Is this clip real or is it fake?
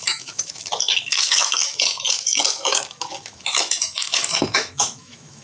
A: fake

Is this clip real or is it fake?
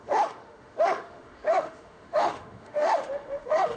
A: fake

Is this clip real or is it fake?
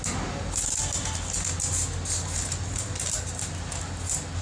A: real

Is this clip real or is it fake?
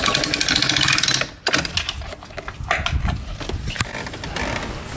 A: real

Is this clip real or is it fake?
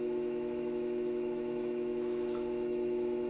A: fake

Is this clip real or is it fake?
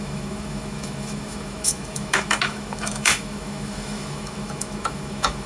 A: fake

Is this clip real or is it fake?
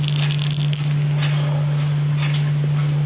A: real